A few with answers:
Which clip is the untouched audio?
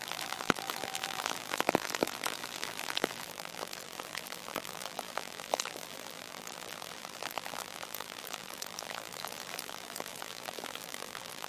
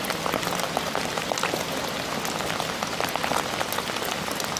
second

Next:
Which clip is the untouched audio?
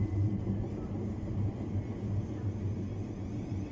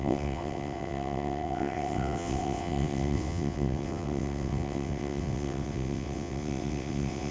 first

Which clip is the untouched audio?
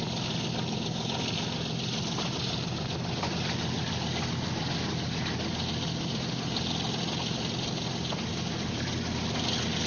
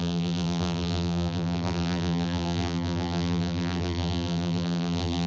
first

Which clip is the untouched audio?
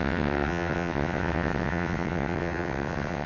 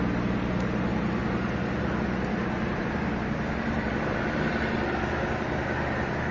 second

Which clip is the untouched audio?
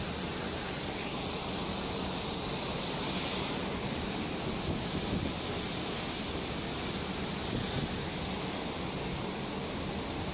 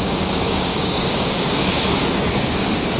first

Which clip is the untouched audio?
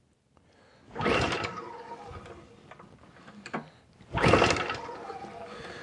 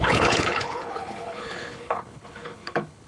first